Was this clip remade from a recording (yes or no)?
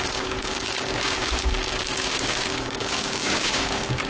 yes